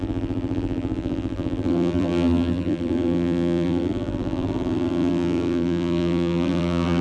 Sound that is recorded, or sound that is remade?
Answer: remade